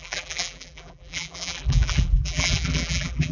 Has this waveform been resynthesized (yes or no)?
yes